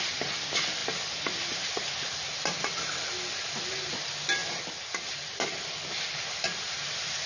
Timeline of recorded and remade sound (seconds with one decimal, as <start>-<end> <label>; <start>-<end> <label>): 0.0-7.3 recorded